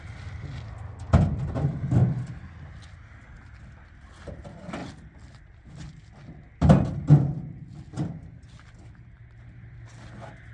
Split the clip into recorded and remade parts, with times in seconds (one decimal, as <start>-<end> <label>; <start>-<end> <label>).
0.0-10.5 recorded